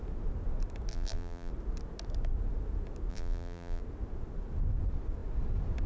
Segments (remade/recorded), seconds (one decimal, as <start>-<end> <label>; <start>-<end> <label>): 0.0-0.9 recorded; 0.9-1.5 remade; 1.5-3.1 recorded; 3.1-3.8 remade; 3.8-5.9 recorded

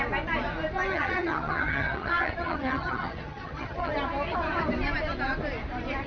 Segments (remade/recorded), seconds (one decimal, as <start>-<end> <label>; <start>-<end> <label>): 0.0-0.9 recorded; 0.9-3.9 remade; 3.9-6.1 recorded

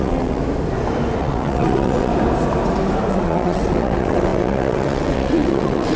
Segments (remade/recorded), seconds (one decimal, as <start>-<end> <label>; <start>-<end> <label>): 0.0-0.4 remade; 0.4-1.2 recorded; 1.2-2.1 remade; 2.1-3.1 recorded; 3.1-6.0 remade

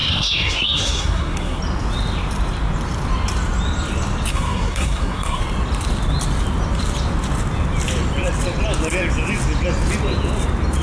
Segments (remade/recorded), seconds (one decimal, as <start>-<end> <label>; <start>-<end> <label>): 0.0-1.6 remade; 1.6-4.3 recorded; 4.3-5.4 remade; 5.4-10.8 recorded

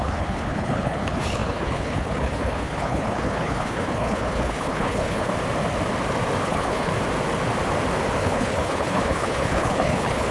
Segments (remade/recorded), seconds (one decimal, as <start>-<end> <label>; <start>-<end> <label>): 0.0-5.3 remade; 5.3-6.4 recorded; 6.4-6.9 remade; 6.9-8.2 recorded; 8.2-10.3 remade